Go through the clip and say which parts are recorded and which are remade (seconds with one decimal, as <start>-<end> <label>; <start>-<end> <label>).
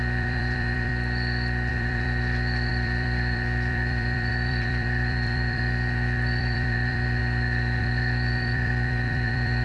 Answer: 0.0-0.9 remade; 0.9-1.7 recorded; 1.7-7.2 remade; 7.2-7.8 recorded; 7.8-9.6 remade